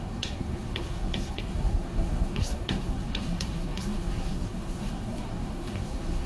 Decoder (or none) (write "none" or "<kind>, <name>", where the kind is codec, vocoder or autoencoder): codec, SNAC